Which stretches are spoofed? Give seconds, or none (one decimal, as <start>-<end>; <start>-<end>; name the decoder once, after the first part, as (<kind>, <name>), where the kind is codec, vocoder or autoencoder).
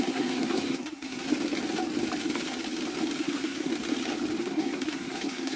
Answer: 0.0-1.3 (codec, SNAC); 3.2-3.7; 4.4-5.6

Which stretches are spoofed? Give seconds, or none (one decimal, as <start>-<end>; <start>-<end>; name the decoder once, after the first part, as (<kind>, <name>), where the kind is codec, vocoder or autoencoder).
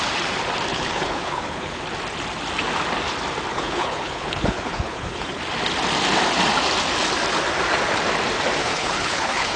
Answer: 0.7-1.8 (codec, HILCodec); 3.5-5.4; 8.6-9.6